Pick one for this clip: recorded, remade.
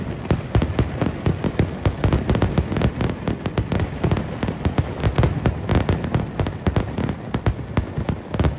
recorded